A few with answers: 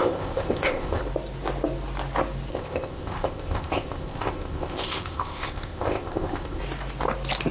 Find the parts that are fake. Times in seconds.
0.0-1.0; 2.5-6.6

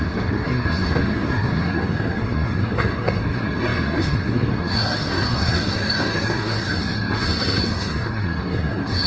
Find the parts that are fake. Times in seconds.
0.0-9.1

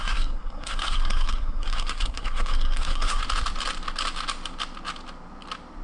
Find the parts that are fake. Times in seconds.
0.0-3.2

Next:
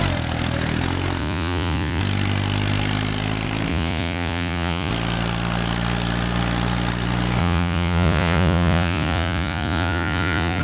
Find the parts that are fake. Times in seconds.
1.2-2.0; 3.7-4.9; 7.4-10.6

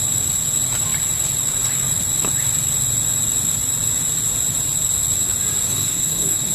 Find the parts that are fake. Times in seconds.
5.7-6.5

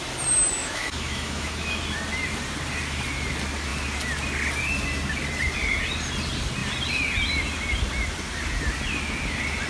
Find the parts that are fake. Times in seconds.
0.6-1.8

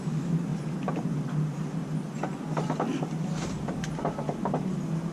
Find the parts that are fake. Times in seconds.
none